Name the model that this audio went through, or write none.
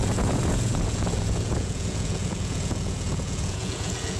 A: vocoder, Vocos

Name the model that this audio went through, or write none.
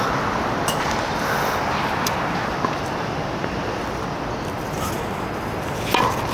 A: none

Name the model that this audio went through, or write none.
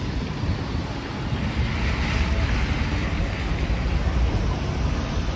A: none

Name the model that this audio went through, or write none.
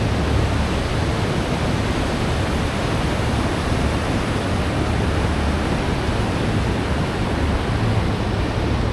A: none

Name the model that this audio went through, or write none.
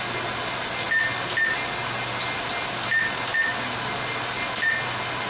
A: none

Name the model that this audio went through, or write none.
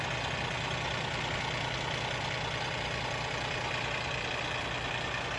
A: none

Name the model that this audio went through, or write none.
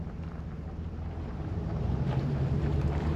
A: vocoder, BigVGAN v2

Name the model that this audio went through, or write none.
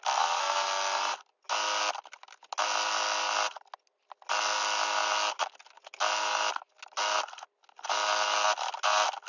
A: none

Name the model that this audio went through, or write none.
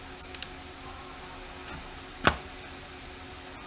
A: none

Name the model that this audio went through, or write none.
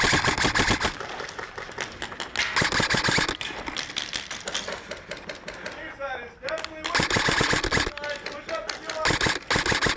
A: none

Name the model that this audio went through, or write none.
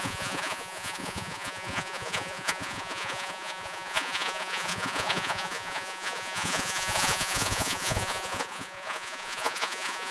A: vocoder, Vocos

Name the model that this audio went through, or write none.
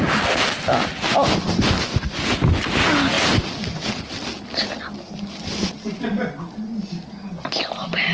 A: none